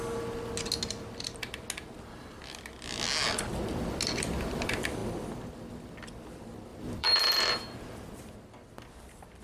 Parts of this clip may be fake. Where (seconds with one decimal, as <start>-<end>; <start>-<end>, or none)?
6.7-8.3